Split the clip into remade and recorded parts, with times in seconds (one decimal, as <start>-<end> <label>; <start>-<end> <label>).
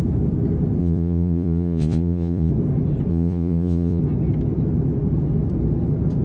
0.0-0.8 recorded; 0.8-2.5 remade; 2.5-3.1 recorded; 3.1-4.0 remade; 4.0-6.2 recorded